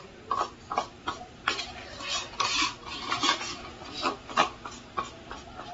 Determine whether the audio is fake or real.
real